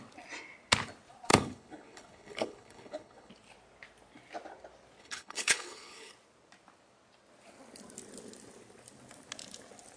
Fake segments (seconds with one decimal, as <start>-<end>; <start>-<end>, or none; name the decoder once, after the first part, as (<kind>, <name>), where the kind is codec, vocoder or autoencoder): 1.3-3.3 (codec, HILCodec); 5.0-6.1